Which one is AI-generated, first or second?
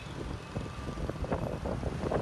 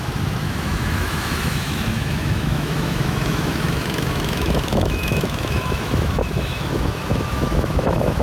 second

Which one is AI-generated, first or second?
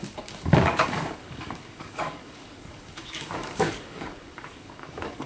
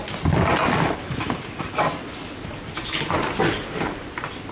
first